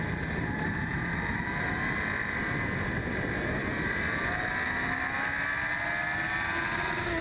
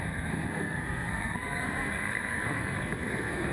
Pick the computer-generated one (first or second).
second